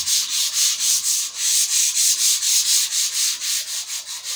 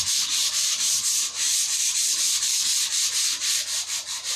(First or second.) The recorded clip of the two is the first